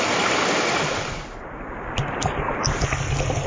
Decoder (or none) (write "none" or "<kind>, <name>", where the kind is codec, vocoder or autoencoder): none